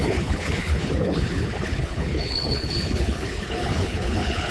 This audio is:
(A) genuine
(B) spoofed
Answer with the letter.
B